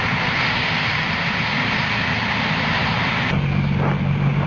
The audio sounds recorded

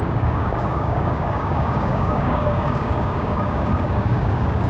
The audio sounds remade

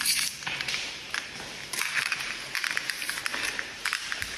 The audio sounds remade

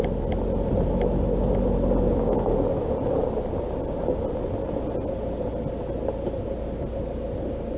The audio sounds recorded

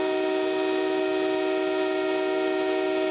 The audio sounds recorded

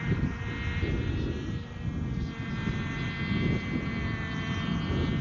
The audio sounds recorded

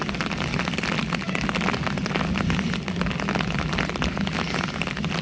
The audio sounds recorded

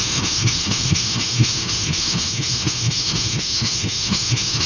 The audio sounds remade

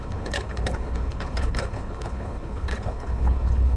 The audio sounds remade